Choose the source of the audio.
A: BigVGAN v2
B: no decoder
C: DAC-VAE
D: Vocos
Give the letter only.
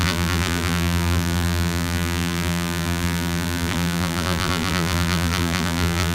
A